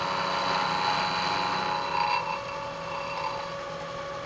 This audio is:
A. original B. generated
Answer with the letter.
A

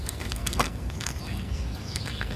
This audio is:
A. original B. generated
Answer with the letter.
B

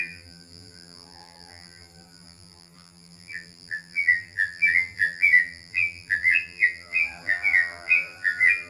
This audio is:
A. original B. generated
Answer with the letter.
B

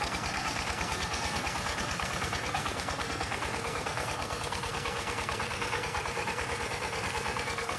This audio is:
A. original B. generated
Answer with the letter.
B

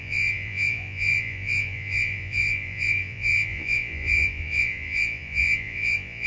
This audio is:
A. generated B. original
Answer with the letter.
A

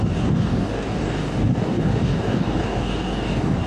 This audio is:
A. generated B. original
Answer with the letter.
A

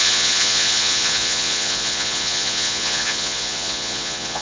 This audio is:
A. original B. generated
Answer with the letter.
B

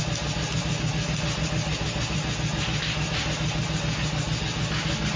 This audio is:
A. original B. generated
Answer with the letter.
A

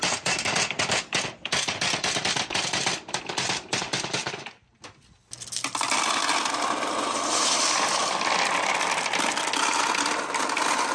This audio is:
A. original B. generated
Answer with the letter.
A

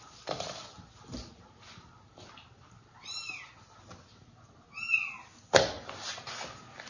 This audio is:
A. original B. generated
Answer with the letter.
A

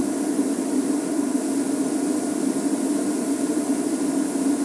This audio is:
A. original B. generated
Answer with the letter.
A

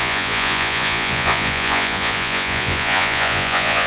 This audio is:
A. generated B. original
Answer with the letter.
A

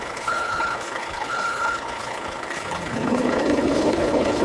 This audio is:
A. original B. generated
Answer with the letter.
B